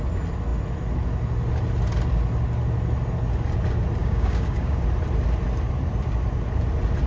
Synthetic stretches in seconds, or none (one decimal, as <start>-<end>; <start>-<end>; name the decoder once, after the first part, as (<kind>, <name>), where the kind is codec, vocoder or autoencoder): 4.0-4.8 (codec, DAC)